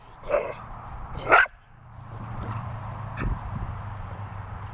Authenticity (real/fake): fake